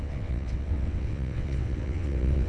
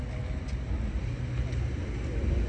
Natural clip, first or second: second